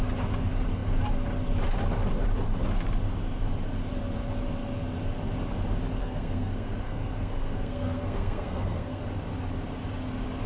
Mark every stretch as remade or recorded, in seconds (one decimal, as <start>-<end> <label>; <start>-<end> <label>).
0.0-6.0 recorded; 6.0-9.0 remade; 9.0-10.5 recorded